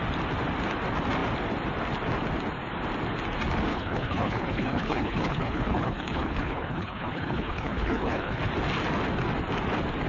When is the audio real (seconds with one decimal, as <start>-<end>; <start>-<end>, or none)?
0.0-3.7; 8.4-10.1